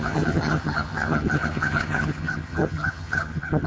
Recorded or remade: remade